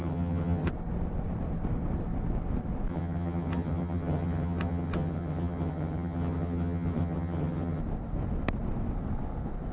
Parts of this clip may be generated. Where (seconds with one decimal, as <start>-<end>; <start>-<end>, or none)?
0.0-0.7; 2.9-7.8